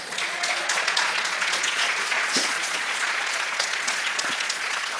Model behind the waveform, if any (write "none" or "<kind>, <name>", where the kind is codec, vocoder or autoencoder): vocoder, Vocos